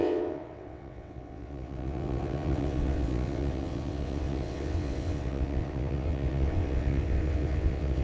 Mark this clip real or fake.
fake